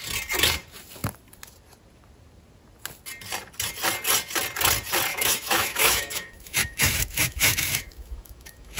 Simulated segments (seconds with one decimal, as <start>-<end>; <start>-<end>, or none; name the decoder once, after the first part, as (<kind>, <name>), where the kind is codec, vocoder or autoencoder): 5.1-8.8 (autoencoder, DAC-VAE)